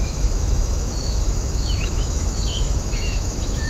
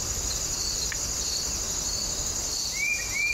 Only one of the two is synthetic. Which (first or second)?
first